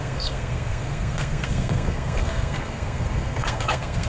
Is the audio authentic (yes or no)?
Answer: no